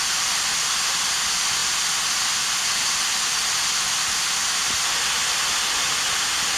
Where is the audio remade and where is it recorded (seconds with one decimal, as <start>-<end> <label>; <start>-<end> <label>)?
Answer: 0.0-6.6 recorded